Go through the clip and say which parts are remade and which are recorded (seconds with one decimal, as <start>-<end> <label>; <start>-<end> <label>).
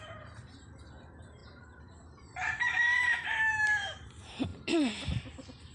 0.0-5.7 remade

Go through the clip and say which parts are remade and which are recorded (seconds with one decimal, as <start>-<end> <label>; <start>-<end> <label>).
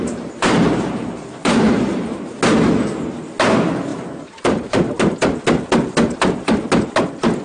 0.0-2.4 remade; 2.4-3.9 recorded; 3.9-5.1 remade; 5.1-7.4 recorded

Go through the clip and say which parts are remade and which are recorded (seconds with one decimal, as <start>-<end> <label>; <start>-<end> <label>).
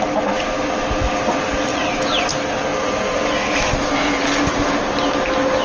0.0-1.7 recorded; 1.7-2.3 remade; 2.3-2.7 recorded; 2.7-3.3 remade; 3.3-5.6 recorded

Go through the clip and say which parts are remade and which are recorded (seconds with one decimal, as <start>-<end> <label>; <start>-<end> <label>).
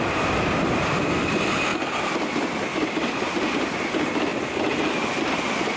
0.0-1.7 remade; 1.7-3.5 recorded; 3.5-5.8 remade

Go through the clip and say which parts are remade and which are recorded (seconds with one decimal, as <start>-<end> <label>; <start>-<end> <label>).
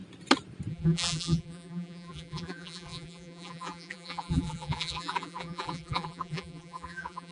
0.0-0.7 recorded; 0.7-7.3 remade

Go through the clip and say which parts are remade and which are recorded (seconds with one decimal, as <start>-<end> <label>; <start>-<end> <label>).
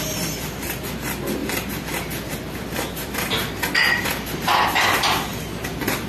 0.0-1.4 recorded; 1.4-2.3 remade; 2.3-6.1 recorded